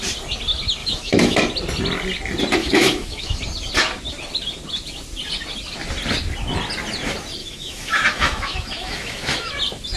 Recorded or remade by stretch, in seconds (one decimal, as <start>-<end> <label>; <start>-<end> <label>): 0.0-0.8 recorded; 0.8-1.4 remade; 1.4-2.6 recorded; 2.6-3.4 remade; 3.4-7.4 recorded; 7.4-9.5 remade; 9.5-10.0 recorded